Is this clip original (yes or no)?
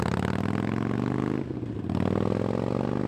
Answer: yes